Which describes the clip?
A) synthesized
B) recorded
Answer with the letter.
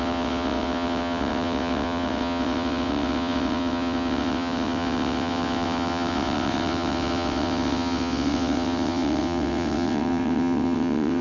A